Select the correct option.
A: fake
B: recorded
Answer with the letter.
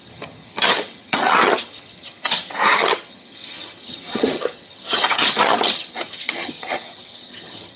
A